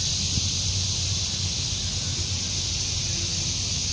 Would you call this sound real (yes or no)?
yes